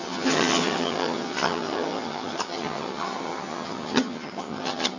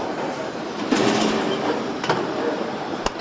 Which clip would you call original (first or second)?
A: second